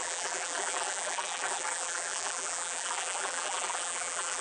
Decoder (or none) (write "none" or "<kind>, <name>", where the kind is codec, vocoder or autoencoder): vocoder, BigVGAN v2